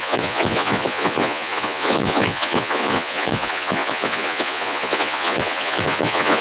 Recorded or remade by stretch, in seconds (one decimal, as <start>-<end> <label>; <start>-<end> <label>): 0.0-6.4 remade